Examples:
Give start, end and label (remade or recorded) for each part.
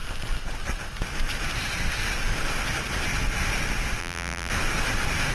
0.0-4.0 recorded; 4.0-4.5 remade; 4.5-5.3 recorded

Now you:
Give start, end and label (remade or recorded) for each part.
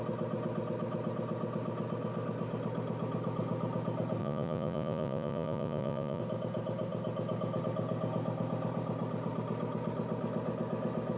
0.0-4.2 recorded; 4.2-6.2 remade; 6.2-11.2 recorded